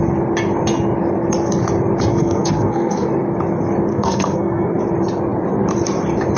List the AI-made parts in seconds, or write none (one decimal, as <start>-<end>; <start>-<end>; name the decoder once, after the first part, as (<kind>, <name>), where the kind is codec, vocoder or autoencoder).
2.1-3.1 (codec, SNAC); 3.9-4.8